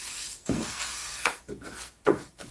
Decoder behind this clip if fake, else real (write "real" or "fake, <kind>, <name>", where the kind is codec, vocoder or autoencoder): fake, codec, SNAC